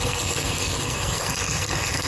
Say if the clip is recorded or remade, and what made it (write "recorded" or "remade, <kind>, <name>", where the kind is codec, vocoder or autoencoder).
remade, codec, SNAC